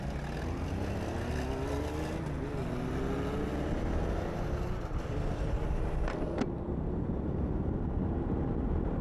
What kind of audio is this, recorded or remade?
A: recorded